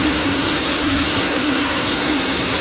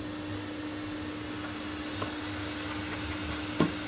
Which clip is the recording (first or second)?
second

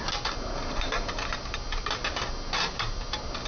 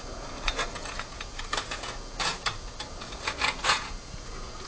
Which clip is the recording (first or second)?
first